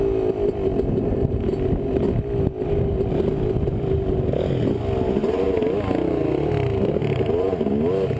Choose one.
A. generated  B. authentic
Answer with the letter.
B